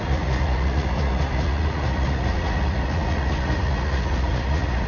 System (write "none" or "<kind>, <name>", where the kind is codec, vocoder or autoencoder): vocoder, Vocos